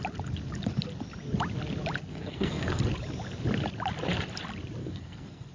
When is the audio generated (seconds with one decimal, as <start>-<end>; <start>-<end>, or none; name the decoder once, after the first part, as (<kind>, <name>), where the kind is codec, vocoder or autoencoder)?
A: 2.1-2.8 (codec, SNAC); 4.8-5.5